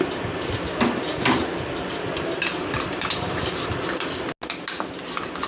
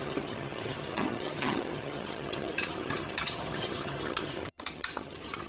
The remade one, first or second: second